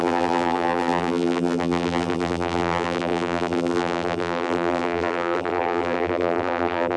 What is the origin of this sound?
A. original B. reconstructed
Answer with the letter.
B